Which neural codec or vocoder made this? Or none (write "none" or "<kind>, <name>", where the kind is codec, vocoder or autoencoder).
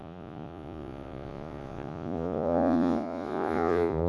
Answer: vocoder, Vocos